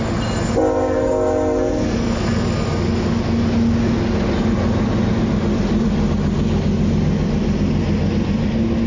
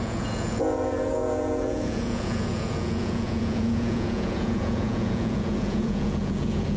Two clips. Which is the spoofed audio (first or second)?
second